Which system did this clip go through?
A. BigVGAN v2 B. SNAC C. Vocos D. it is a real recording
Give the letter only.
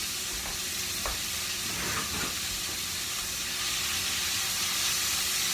D